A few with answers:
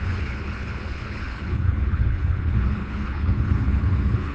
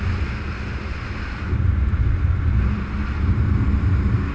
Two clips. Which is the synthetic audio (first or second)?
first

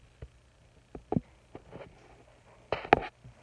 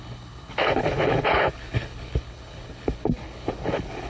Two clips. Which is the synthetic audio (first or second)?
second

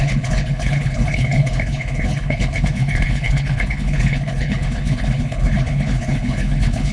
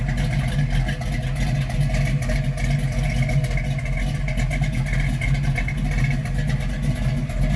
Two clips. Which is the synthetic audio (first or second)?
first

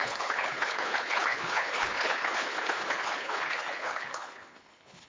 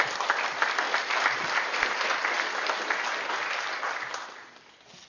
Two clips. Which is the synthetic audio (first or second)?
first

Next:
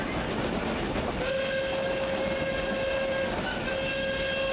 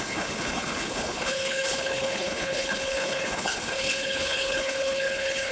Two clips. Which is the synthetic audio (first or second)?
second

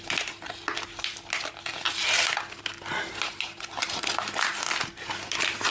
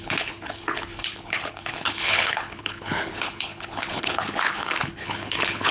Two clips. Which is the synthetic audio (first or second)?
second